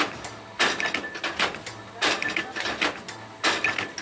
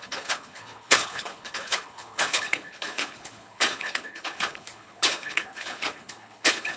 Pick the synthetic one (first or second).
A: second